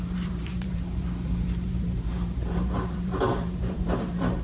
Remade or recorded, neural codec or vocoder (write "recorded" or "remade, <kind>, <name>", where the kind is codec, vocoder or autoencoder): remade, vocoder, BigVGAN v2